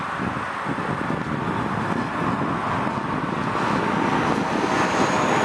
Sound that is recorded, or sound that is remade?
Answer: recorded